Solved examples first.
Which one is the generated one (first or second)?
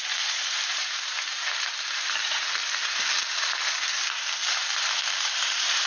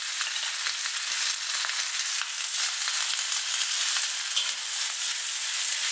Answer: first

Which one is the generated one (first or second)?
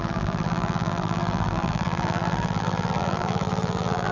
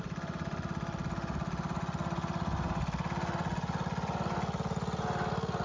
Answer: first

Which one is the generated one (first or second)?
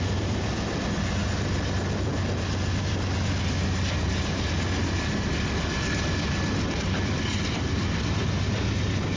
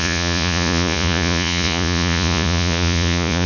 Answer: second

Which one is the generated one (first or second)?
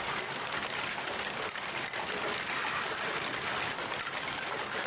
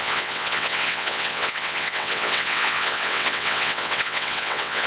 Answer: second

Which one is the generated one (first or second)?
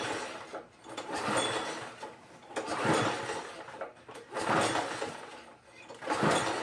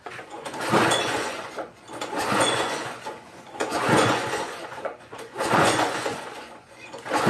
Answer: second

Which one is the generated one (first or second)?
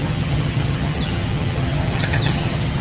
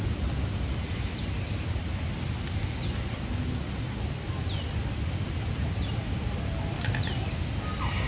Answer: first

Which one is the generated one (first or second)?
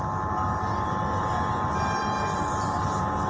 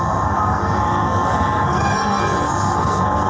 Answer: second